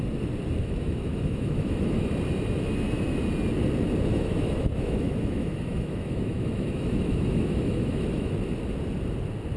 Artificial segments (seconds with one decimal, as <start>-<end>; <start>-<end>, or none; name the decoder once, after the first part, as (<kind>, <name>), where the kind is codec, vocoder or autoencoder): 0.6-2.1 (autoencoder, DAC-VAE); 4.1-8.3